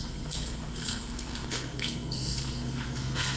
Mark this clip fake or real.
fake